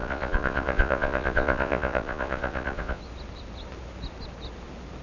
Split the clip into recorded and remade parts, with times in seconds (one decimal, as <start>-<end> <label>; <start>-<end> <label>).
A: 0.0-3.0 remade; 3.0-5.0 recorded